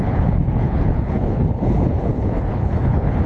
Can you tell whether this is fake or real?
fake